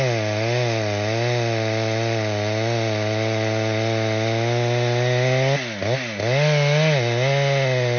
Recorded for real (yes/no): yes